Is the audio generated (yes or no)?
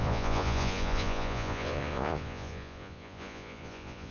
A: yes